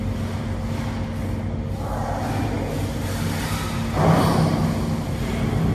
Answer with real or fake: real